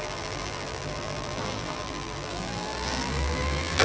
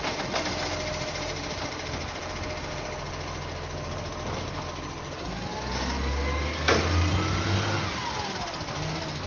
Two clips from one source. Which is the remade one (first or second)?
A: first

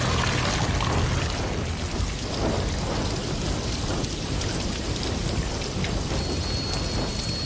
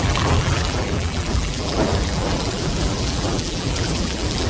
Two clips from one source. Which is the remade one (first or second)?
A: second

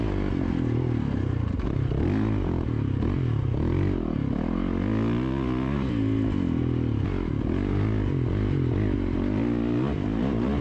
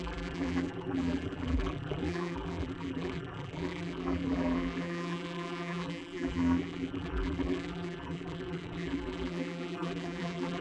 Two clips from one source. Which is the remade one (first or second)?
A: second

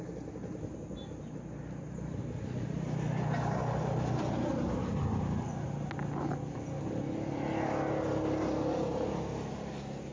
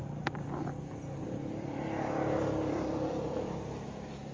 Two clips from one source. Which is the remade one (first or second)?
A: second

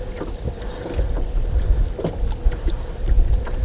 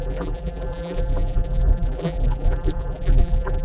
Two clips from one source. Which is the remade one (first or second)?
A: second